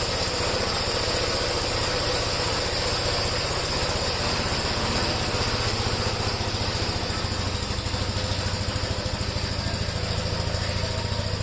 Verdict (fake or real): real